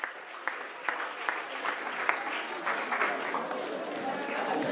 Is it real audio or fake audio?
real